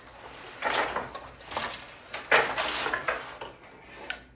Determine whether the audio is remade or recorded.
recorded